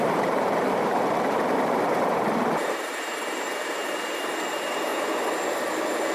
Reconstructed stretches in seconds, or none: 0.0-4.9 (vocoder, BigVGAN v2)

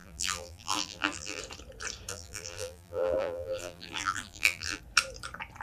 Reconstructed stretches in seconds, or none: 0.0-1.4 (vocoder, BigVGAN v2); 2.1-4.8

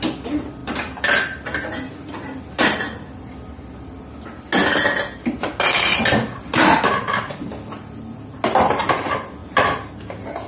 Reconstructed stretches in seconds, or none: 0.6-4.2 (vocoder, BigVGAN v2); 9.4-9.9

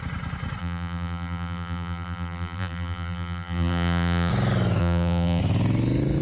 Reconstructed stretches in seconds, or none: 0.6-4.3 (vocoder, BigVGAN v2); 4.8-5.4

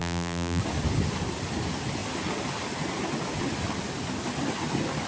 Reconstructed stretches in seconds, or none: 0.0-0.6 (vocoder, BigVGAN v2)

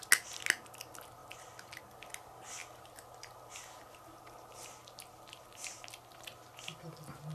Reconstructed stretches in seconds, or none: none

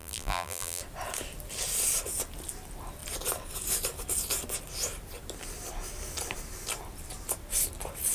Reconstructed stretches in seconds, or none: 0.0-0.8 (vocoder, BigVGAN v2)

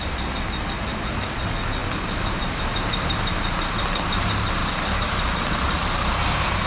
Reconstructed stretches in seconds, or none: none